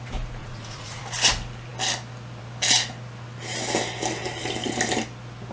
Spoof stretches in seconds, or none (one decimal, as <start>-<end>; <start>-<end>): 0.4-1.0